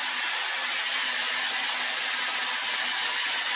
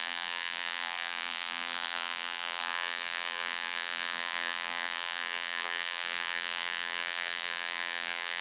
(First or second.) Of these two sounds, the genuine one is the first